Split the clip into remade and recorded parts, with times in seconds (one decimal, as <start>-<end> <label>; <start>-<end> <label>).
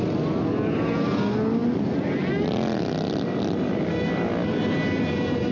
0.0-5.5 recorded